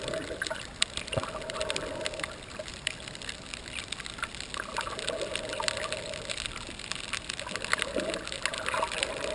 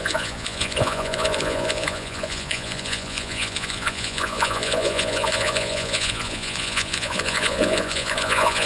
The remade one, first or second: second